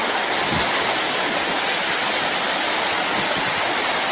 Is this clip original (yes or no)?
yes